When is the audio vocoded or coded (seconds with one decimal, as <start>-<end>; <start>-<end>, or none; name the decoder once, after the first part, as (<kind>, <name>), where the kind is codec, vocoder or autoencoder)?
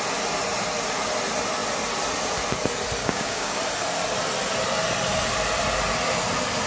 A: 3.0-3.6 (codec, DAC)